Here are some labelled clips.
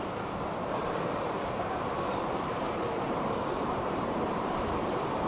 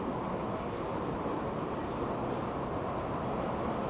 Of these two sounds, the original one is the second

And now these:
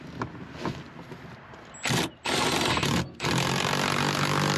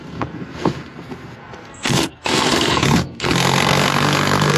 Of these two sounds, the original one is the first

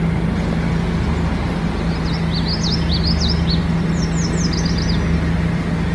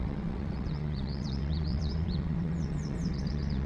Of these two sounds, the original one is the first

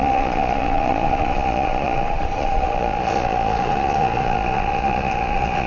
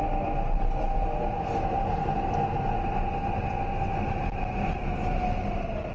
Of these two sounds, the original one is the second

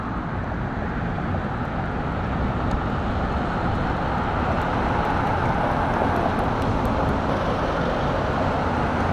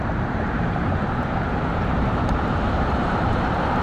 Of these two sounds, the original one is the first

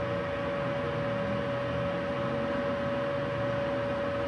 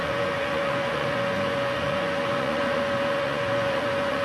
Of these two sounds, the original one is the first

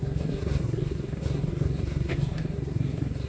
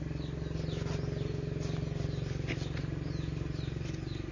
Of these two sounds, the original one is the second